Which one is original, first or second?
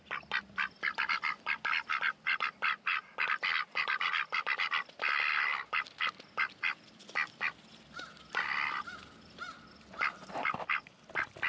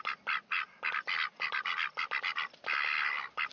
second